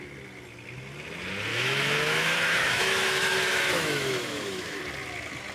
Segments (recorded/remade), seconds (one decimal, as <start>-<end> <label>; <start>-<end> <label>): 0.0-1.5 recorded; 1.5-4.8 remade; 4.8-5.5 recorded